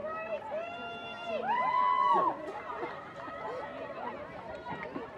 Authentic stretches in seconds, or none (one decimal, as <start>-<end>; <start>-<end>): 0.0-2.7; 3.6-5.2